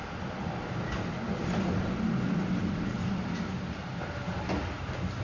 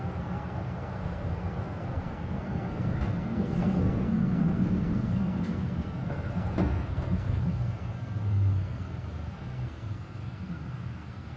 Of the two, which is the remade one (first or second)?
second